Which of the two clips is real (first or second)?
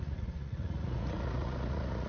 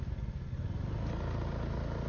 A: second